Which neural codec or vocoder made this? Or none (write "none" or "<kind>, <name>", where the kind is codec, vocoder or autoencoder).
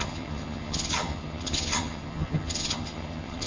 vocoder, HiFi-GAN